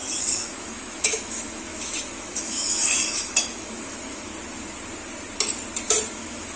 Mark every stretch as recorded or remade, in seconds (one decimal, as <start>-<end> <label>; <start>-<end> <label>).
0.0-4.3 remade; 4.3-6.1 recorded; 6.1-6.6 remade